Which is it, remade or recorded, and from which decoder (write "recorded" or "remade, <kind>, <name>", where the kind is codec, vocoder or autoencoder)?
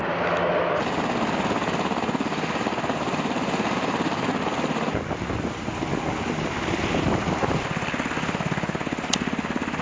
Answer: recorded